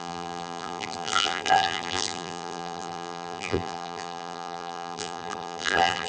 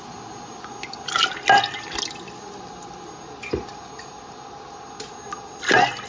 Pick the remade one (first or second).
first